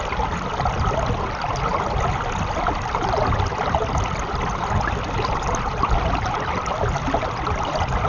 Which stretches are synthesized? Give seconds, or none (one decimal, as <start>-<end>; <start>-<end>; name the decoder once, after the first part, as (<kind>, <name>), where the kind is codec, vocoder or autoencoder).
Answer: none